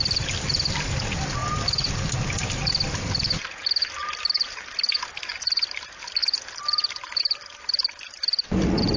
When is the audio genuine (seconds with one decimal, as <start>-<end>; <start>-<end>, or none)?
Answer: 0.0-9.0